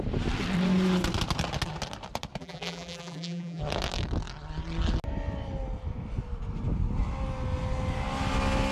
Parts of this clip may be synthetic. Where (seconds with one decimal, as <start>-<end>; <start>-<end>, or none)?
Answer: 2.4-3.6